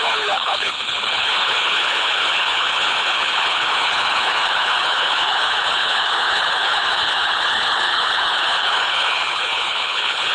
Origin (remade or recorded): remade